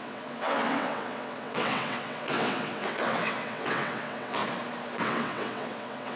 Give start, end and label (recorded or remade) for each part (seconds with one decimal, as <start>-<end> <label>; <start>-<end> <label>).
0.0-4.4 remade; 4.4-5.0 recorded; 5.0-6.2 remade